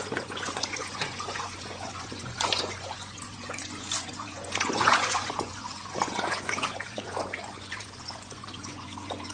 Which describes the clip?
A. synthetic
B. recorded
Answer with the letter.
A